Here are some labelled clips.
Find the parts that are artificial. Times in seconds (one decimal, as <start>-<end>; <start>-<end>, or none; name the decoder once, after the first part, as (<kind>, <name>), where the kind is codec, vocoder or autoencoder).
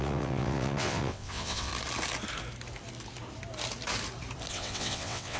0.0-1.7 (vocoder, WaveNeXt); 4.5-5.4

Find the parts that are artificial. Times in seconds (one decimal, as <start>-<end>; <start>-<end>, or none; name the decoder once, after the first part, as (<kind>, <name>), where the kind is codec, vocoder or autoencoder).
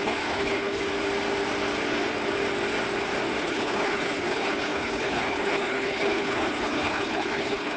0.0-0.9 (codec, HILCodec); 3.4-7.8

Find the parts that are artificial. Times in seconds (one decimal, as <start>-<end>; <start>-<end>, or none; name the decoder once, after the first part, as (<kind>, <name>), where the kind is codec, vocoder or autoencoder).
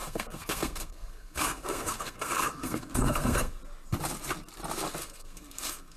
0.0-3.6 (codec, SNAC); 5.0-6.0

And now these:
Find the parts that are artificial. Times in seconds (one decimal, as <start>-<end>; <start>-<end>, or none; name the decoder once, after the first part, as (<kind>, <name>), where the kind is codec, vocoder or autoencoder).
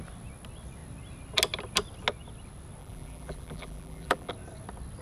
2.8-4.3 (vocoder, BigVGAN v2)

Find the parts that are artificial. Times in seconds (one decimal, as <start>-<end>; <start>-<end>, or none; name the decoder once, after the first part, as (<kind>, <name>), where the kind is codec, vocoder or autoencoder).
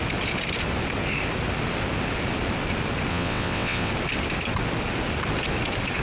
3.1-3.9 (vocoder, WaveNeXt)